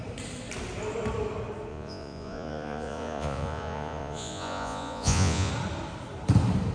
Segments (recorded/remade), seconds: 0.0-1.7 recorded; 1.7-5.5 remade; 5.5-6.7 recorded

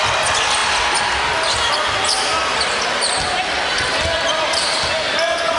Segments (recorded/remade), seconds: 0.0-5.6 recorded